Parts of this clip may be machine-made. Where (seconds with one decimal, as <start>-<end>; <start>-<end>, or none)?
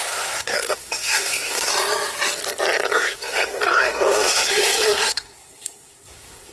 0.0-1.7; 2.9-6.5